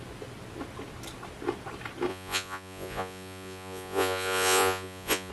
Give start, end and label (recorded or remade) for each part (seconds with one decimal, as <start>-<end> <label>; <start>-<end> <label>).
0.0-2.1 recorded; 2.1-5.3 remade